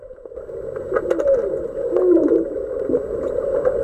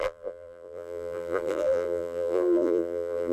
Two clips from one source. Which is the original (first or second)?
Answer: first